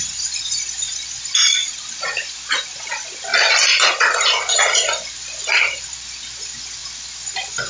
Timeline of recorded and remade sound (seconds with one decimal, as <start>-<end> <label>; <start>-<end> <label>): 0.0-7.7 recorded